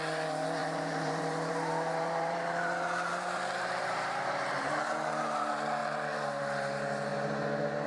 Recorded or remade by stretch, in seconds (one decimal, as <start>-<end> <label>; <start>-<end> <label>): 0.0-0.6 recorded; 0.6-4.7 remade; 4.7-7.9 recorded